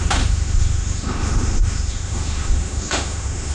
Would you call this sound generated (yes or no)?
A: yes